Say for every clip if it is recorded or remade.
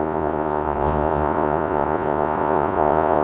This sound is remade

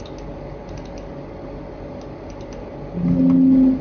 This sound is recorded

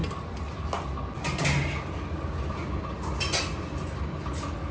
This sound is recorded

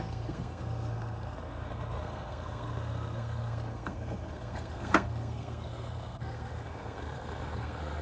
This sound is remade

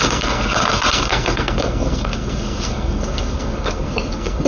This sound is remade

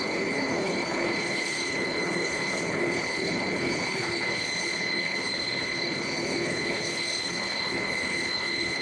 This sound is remade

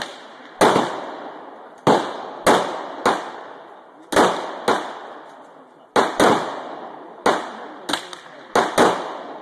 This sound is recorded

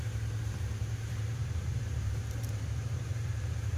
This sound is remade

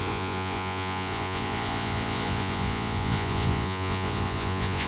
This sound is remade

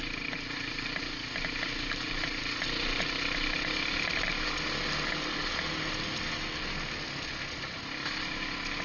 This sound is recorded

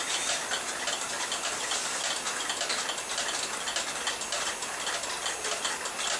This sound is recorded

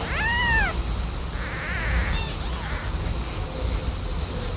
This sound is recorded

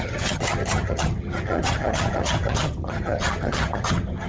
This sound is remade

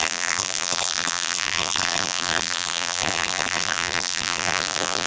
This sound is remade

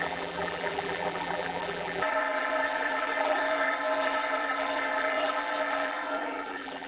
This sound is remade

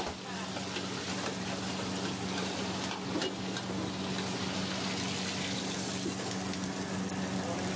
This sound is recorded